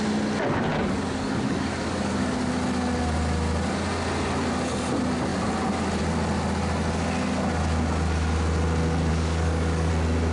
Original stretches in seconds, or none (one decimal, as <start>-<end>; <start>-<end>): 0.0-0.7; 2.5-9.1; 9.9-10.3